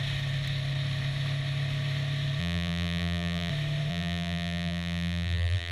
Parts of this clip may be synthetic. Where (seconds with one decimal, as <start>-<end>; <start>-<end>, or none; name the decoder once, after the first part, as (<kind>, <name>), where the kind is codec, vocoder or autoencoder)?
2.4-3.5 (vocoder, BigVGAN v2); 3.9-5.7